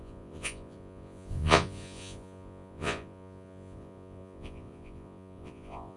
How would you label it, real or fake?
fake